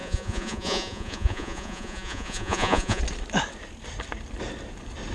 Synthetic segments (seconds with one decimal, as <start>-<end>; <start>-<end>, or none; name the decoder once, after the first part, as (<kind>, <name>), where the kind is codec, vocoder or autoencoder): 0.0-3.0 (vocoder, Vocos)